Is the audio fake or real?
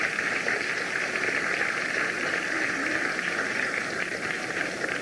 real